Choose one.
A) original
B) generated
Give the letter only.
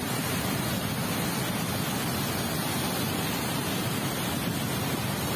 A